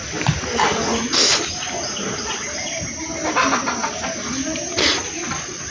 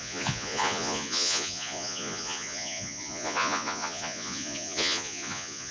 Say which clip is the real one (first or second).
first